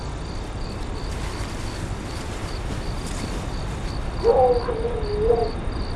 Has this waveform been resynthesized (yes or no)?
no